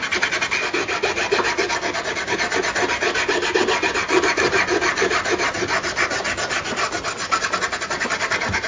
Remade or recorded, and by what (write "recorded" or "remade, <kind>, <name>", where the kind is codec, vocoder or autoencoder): recorded